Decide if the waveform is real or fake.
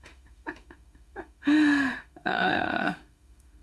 fake